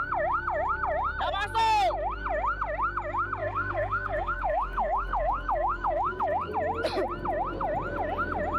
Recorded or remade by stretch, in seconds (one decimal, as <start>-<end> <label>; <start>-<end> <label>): 0.0-3.4 recorded; 3.4-6.5 remade; 6.5-8.6 recorded